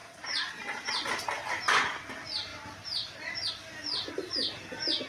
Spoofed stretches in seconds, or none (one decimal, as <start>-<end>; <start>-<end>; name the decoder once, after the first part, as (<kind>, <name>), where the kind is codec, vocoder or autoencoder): 0.0-2.1 (vocoder, BigVGAN v2); 2.5-3.5

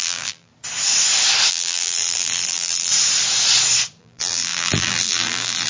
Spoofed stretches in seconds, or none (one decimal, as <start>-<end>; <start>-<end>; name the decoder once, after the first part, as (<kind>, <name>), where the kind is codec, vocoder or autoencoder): 0.0-0.5 (vocoder, BigVGAN v2); 1.5-2.9; 4.0-5.7

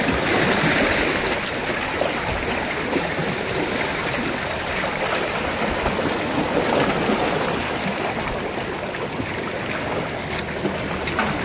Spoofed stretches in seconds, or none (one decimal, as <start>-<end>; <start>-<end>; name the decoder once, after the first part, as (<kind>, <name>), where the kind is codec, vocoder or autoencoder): 3.9-4.9 (vocoder, BigVGAN v2)